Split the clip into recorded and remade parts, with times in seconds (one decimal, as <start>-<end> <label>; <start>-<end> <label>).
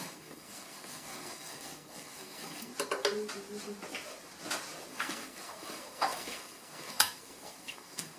0.0-2.7 remade; 2.7-4.9 recorded; 4.9-8.2 remade